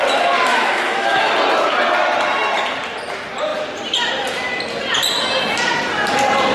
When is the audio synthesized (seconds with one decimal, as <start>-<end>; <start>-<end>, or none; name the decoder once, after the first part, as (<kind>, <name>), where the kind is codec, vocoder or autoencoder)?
0.5-1.3 (autoencoder, DAC-VAE)